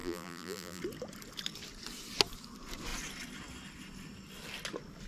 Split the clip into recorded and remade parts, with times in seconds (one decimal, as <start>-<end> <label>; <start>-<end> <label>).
0.0-0.8 remade; 0.8-5.1 recorded